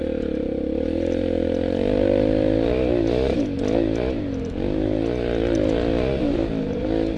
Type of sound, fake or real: real